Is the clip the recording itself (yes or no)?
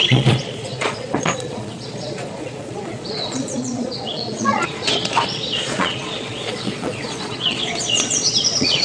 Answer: no